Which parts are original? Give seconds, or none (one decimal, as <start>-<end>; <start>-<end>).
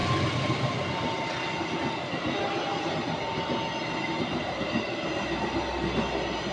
0.0-6.5